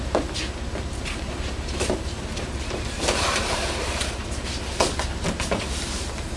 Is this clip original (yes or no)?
yes